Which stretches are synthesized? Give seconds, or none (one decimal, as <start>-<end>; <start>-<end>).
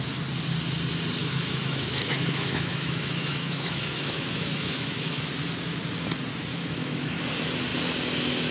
1.2-5.2; 6.5-7.2